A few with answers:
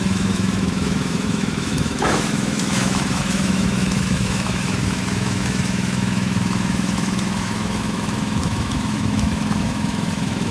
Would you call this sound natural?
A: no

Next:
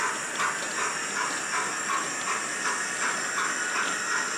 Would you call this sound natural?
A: yes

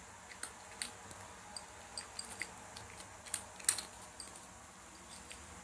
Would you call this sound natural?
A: yes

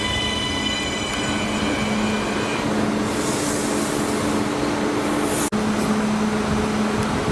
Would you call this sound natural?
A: yes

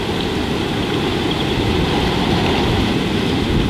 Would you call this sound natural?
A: yes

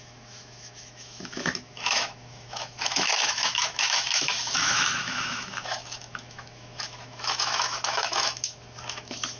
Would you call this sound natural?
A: no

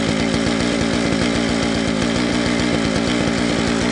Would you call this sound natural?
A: yes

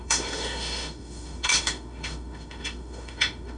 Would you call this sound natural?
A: no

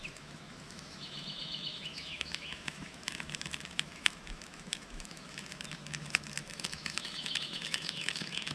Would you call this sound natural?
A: no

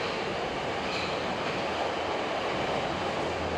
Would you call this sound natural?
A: yes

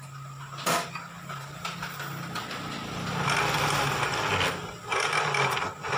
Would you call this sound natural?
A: yes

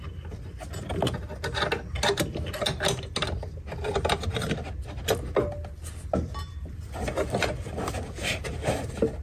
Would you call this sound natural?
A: yes